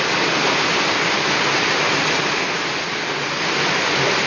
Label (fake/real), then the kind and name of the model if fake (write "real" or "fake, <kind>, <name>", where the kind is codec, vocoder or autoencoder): real